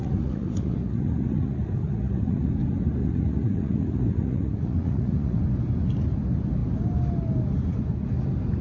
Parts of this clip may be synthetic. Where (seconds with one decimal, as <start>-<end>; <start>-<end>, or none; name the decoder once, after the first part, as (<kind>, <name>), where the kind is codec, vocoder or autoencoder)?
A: 0.0-2.5 (vocoder, Vocos); 3.0-5.4